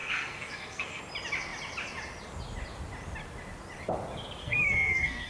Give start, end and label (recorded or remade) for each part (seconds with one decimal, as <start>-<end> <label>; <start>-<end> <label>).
0.0-1.0 remade; 1.0-4.4 recorded; 4.4-5.3 remade